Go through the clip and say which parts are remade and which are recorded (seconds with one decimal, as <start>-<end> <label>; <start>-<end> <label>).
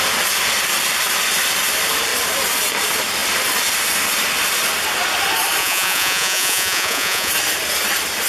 0.0-5.6 recorded; 5.6-7.3 remade; 7.3-8.3 recorded